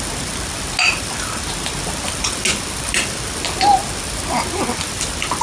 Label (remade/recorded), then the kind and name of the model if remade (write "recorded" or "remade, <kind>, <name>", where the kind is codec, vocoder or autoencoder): recorded